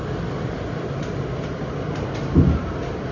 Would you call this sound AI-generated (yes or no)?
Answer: no